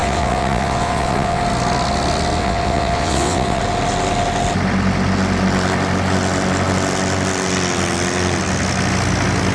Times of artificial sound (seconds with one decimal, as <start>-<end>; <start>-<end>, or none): 0.0-1.4; 2.4-3.6

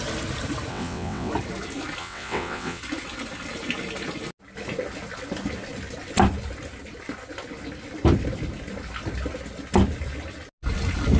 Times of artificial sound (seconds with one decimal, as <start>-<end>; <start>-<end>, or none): 0.7-1.3; 2.0-2.8

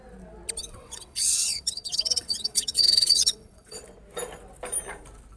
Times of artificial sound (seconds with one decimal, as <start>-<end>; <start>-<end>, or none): 0.6-3.8

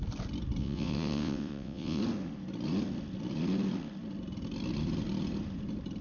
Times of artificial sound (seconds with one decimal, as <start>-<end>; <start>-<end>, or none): 0.6-2.0